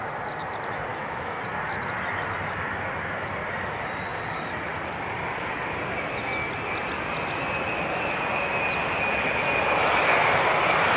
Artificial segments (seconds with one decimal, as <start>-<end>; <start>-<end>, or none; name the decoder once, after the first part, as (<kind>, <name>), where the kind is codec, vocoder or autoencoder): 0.9-1.4 (autoencoder, DAC-VAE)

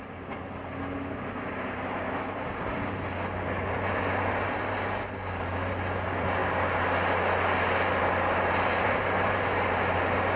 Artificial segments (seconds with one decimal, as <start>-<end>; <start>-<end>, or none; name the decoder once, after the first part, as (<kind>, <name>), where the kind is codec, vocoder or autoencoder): none